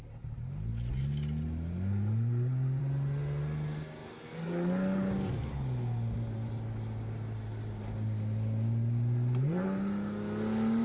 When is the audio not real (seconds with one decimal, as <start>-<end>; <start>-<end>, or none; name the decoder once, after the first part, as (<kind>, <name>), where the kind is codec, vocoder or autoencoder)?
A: none